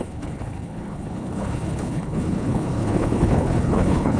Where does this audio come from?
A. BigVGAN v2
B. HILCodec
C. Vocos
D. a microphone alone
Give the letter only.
B